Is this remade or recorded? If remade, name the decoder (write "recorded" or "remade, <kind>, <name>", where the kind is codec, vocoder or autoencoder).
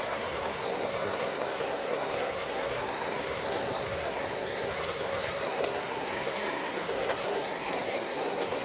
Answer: remade, codec, SNAC